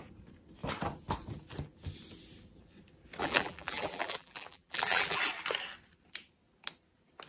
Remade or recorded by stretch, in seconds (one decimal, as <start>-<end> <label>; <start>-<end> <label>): 0.0-3.2 recorded; 3.2-5.2 remade; 5.2-7.3 recorded